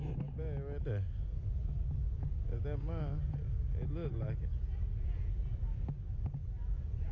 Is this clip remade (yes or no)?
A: no